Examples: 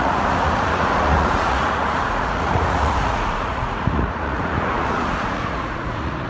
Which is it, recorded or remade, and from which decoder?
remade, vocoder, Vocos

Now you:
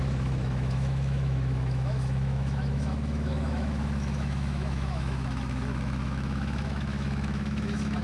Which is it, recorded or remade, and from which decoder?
remade, autoencoder, DAC-VAE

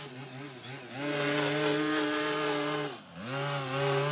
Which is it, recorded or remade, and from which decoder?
recorded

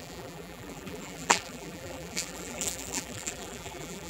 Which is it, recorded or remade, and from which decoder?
remade, vocoder, BigVGAN v2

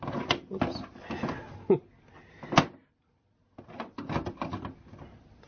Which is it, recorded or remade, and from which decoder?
recorded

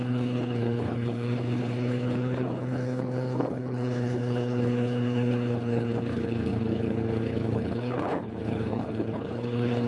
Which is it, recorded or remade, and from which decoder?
remade, codec, HILCodec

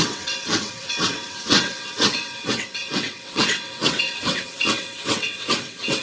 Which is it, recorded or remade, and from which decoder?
remade, vocoder, WaveNeXt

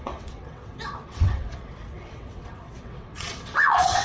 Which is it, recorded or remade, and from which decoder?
remade, vocoder, WaveNeXt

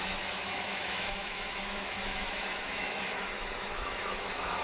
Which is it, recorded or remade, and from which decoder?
remade, autoencoder, DAC-VAE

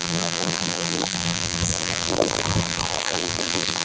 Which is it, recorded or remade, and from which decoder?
remade, vocoder, BigVGAN v2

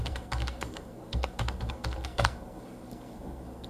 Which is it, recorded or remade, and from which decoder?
remade, codec, SNAC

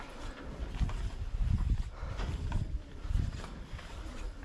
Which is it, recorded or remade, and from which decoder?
remade, vocoder, BigVGAN v2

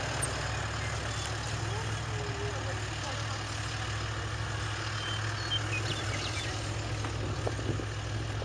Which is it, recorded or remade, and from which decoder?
recorded